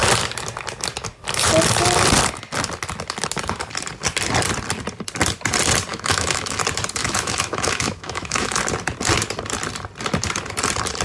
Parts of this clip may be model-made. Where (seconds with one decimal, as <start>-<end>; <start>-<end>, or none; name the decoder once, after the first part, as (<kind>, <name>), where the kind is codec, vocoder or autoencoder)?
5.9-6.6 (autoencoder, DAC-VAE); 7.0-8.6